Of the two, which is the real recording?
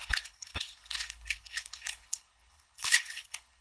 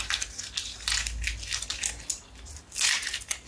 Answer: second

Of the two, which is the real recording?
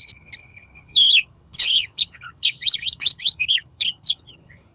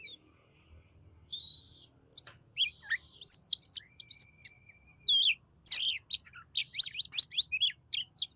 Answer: second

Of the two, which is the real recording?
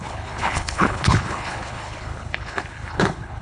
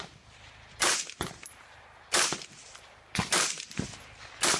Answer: second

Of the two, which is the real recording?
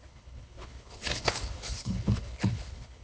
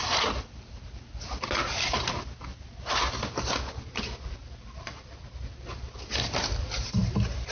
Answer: second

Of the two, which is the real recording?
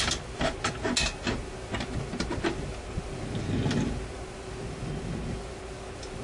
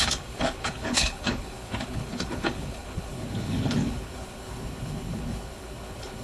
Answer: first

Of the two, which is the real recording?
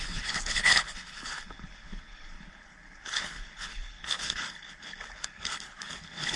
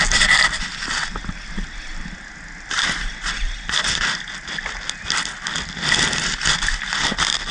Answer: second